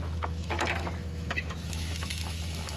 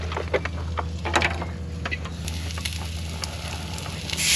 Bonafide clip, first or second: second